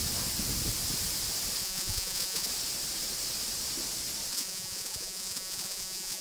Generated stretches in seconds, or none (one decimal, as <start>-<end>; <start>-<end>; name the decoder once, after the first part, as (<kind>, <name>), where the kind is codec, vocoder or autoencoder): 1.6-2.5 (vocoder, Vocos); 4.3-6.2